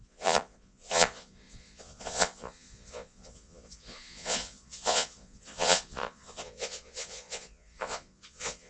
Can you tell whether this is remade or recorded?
remade